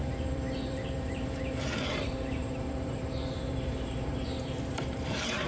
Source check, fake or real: fake